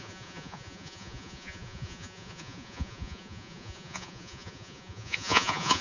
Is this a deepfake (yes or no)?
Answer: yes